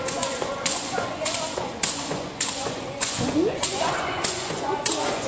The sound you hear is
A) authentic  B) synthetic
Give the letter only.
B